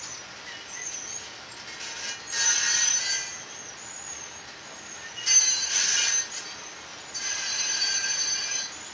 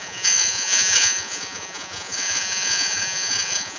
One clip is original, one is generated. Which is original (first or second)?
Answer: first